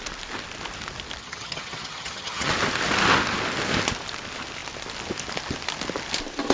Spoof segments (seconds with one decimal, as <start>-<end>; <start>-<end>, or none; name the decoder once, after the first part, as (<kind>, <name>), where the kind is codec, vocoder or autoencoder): 1.2-2.5 (vocoder, HiFi-GAN)